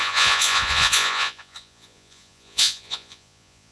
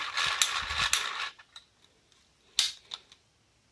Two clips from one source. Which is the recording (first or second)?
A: second